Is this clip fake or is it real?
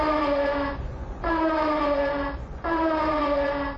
fake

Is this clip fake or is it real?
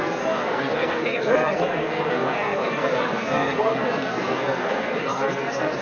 fake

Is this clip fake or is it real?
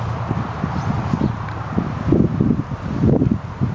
real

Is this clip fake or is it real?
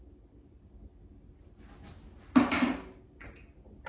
real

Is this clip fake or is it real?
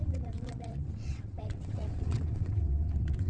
fake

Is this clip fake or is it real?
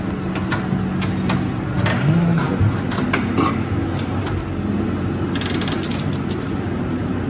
real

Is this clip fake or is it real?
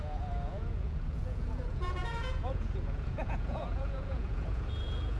fake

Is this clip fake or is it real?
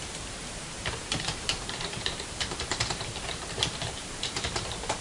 fake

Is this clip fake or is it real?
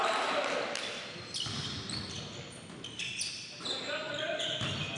real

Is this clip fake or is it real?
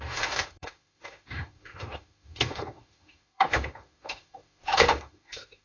fake